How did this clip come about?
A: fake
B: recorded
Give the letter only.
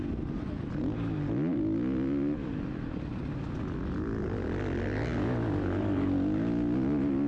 B